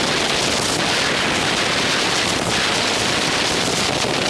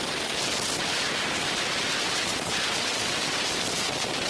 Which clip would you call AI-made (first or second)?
second